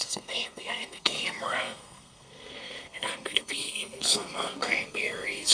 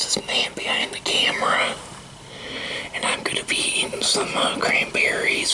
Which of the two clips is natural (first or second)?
second